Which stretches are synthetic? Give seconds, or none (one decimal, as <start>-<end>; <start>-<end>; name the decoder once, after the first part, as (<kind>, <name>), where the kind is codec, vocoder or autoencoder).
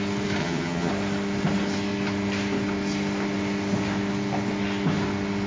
0.4-0.9 (vocoder, HiFi-GAN)